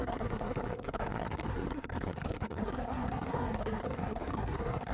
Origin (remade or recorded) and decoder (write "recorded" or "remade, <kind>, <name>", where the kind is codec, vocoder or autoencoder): remade, codec, SNAC